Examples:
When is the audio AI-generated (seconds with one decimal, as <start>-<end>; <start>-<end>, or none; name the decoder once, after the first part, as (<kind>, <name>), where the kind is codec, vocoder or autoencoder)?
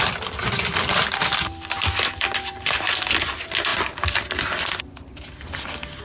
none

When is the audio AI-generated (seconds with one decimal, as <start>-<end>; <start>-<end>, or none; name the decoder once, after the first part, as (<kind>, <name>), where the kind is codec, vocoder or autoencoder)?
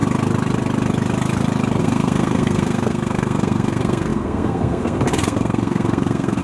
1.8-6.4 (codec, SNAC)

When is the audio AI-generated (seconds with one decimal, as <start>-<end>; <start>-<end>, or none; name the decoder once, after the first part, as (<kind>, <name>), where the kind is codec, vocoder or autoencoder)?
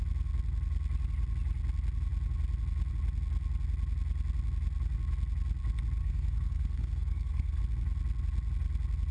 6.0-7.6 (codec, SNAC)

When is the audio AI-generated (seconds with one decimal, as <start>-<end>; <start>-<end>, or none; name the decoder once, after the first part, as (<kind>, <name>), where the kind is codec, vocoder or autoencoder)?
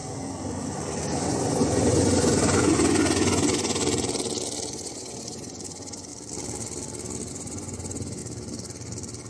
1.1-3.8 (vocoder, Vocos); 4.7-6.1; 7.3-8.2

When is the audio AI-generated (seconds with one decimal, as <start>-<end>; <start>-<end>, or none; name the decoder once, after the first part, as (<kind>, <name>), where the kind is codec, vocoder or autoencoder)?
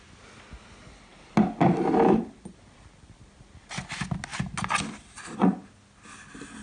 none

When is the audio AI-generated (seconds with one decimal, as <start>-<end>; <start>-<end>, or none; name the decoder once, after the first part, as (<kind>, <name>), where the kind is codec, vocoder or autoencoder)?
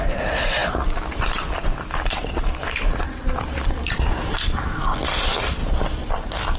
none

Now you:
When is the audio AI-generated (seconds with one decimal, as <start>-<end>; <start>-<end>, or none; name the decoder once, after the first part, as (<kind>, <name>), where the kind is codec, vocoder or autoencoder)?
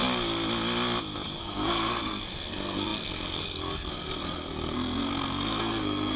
1.4-6.2 (codec, SNAC)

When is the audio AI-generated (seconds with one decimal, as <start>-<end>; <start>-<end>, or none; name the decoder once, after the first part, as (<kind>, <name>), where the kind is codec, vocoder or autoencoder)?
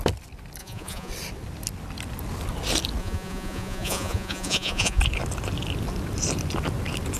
0.6-1.1 (vocoder, Vocos); 3.0-5.0